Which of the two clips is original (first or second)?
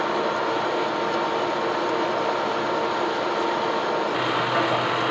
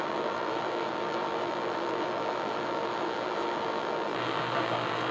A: first